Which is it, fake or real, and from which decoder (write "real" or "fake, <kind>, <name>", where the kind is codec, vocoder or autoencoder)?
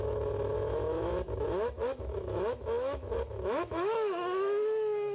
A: fake, autoencoder, DAC-VAE